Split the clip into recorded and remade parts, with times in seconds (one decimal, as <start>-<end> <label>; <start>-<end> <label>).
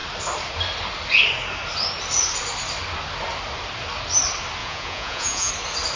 0.0-4.6 recorded; 4.6-5.5 remade; 5.5-6.0 recorded